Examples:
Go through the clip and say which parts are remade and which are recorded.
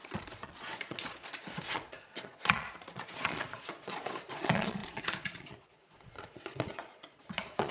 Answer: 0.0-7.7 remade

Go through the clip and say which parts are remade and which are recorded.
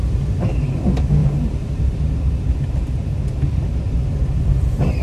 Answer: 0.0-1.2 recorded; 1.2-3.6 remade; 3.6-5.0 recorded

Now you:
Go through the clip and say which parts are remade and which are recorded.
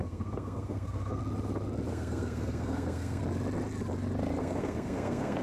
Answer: 0.0-1.2 remade; 1.2-1.9 recorded; 1.9-3.2 remade; 3.2-4.4 recorded; 4.4-5.4 remade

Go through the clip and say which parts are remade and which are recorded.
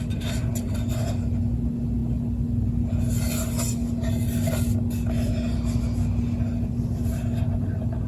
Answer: 0.0-8.1 recorded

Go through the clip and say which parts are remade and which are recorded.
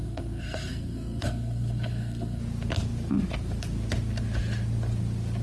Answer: 0.0-2.4 remade; 2.4-5.4 recorded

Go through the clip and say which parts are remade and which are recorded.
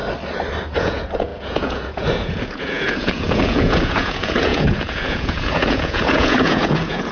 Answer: 0.0-0.8 recorded; 0.8-7.1 remade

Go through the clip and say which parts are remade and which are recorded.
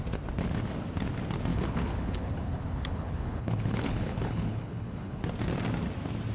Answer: 0.0-1.5 recorded; 1.5-5.2 remade; 5.2-6.3 recorded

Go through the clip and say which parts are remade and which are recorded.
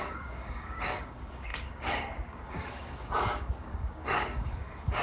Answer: 0.0-5.0 remade